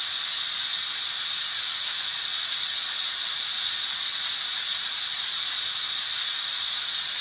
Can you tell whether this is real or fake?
real